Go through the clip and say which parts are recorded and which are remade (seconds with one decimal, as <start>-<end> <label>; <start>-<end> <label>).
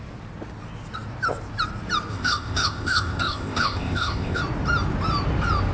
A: 0.0-2.1 recorded; 2.1-4.4 remade; 4.4-5.7 recorded